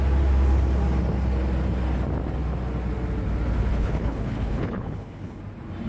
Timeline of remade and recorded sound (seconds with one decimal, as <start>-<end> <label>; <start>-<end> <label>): 0.0-3.7 recorded; 3.7-5.4 remade; 5.4-5.9 recorded